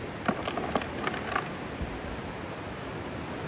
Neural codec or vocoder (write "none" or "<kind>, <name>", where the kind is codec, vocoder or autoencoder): none